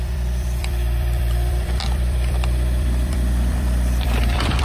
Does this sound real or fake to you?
fake